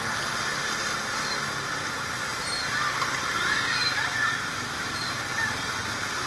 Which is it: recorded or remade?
recorded